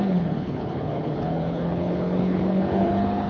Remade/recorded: remade